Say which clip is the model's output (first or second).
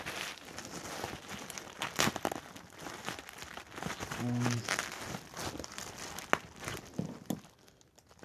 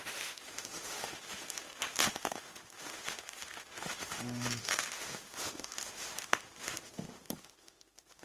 second